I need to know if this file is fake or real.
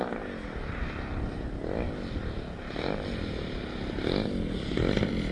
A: real